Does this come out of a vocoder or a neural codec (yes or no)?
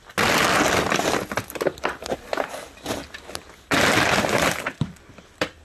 no